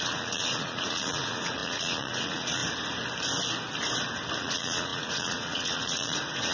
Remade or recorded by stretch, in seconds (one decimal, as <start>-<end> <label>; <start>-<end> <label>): 0.0-2.6 remade; 2.6-4.4 recorded; 4.4-6.5 remade